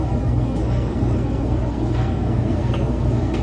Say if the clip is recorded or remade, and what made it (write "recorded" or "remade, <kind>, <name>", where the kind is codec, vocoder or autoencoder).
remade, codec, SNAC